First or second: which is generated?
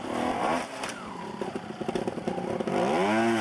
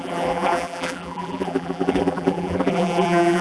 second